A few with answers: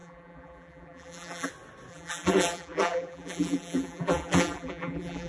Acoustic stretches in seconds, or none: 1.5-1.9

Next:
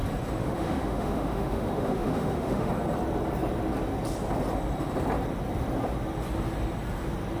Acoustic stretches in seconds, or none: 0.0-0.4; 2.7-7.4

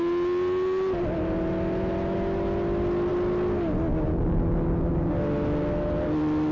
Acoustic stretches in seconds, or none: 0.0-6.5